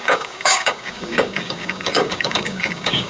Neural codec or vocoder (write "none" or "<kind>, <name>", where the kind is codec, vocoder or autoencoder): codec, DAC